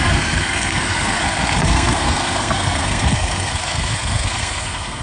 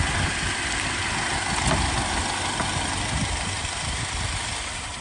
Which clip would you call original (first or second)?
second